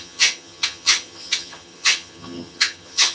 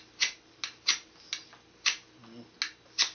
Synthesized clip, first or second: first